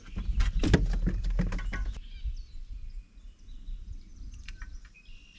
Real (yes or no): yes